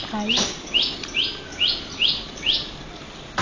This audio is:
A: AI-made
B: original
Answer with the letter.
B